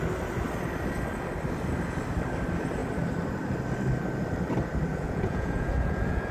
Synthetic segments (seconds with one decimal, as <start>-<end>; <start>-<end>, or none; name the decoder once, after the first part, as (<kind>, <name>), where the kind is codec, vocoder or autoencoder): 4.9-6.3 (vocoder, Vocos)